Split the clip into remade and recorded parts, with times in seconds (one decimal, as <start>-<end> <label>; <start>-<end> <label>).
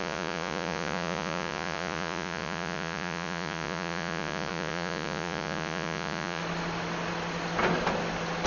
0.0-6.4 remade; 6.4-8.5 recorded